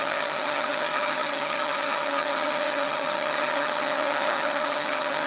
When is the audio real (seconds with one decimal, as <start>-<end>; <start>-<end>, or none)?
none